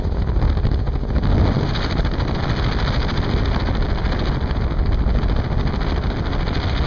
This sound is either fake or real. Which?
real